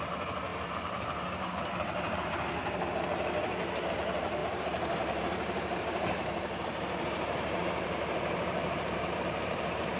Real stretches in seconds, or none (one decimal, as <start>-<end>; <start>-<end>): 0.0-0.5; 2.3-4.4; 9.6-10.0